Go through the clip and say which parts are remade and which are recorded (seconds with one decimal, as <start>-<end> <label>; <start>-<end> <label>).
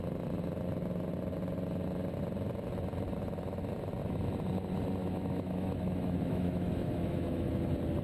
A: 0.0-5.0 recorded; 5.0-7.5 remade; 7.5-8.0 recorded